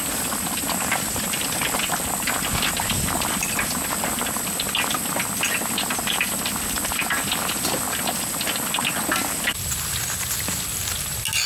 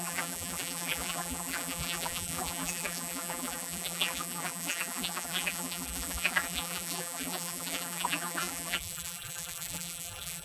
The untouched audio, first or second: first